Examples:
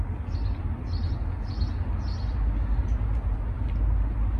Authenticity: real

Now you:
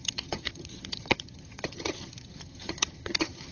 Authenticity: fake